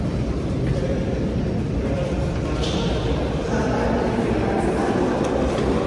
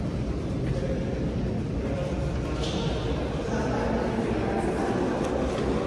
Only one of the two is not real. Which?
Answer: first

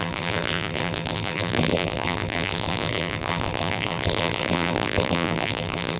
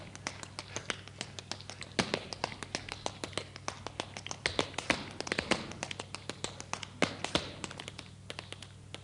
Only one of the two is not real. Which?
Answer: first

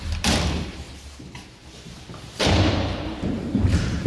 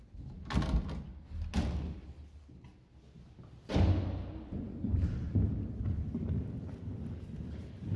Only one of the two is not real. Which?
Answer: first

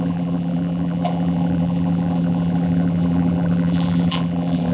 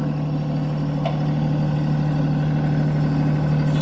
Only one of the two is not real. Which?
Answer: first